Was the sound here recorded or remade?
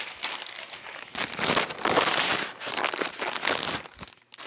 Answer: recorded